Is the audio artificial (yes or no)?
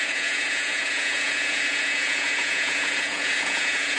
yes